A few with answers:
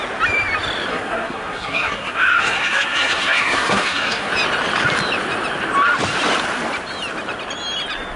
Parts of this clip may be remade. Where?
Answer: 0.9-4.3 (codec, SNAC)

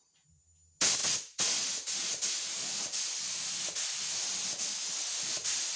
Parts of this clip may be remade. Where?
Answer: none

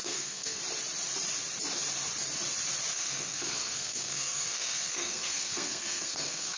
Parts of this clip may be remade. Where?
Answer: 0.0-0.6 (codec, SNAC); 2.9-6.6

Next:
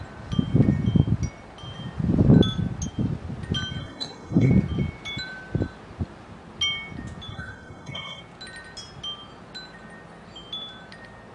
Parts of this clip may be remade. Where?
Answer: 3.8-4.5 (codec, SNAC); 7.3-8.2

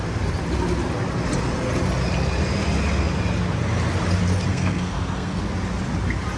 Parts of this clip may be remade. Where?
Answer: 4.5-5.4 (codec, SNAC)